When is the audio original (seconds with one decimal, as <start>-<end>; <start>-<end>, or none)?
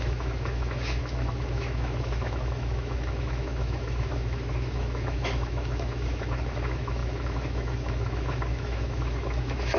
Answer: none